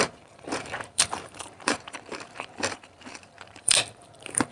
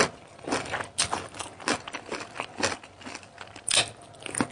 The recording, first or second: second